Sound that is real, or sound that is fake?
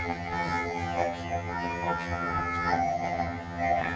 fake